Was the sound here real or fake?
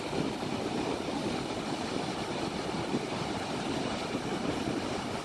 fake